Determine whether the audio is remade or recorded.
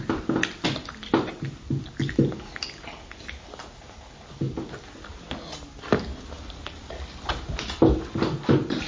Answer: recorded